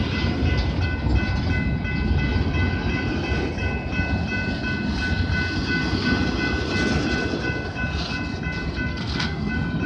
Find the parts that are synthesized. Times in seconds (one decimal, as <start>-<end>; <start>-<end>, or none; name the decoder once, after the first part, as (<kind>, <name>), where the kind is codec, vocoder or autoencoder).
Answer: 8.9-9.5 (codec, SNAC)